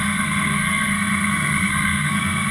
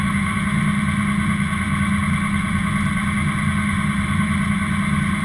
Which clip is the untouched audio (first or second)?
second